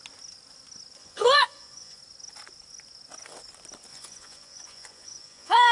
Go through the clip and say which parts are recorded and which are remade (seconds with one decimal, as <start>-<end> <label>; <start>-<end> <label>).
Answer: 0.0-1.0 recorded; 1.0-2.0 remade; 2.0-3.9 recorded; 3.9-5.7 remade